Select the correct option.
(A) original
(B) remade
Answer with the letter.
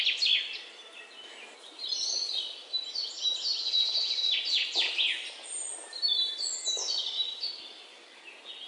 A